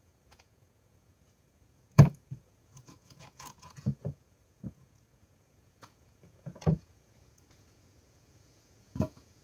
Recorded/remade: remade